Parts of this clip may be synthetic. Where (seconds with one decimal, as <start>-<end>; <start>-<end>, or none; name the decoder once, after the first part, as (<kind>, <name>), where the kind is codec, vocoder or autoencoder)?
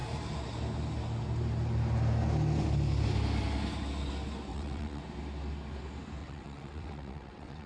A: 4.5-5.0 (vocoder, WaveNeXt); 6.2-7.7